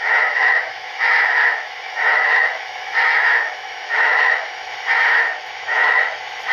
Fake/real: fake